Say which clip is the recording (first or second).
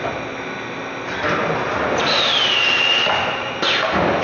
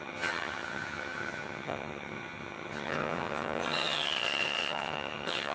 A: first